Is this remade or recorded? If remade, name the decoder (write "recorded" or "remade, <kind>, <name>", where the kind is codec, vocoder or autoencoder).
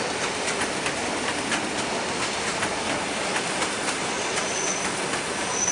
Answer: recorded